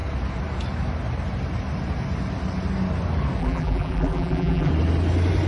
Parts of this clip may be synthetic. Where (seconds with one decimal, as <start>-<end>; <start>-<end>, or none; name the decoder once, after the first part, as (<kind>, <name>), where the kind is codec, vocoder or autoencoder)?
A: 3.4-4.7 (vocoder, BigVGAN v2)